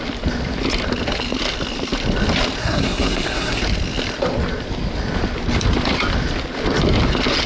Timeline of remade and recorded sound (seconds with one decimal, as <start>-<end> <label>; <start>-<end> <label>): 0.0-2.6 recorded; 2.6-3.6 remade; 3.6-7.5 recorded